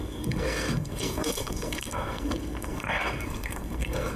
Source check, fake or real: fake